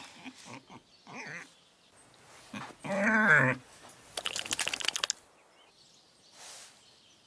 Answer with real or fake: real